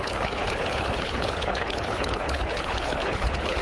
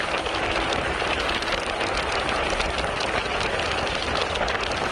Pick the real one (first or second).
second